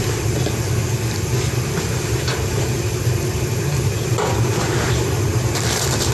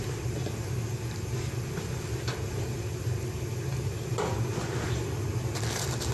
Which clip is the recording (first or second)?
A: second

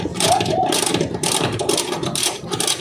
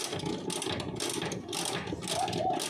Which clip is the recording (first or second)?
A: second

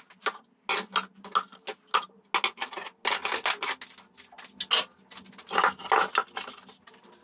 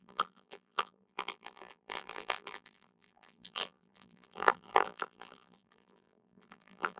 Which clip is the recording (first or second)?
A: first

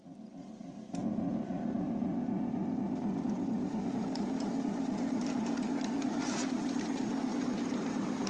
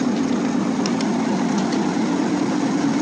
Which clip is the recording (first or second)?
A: second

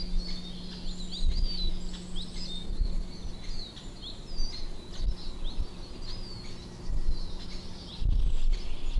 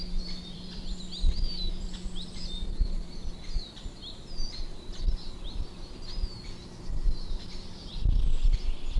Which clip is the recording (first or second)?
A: first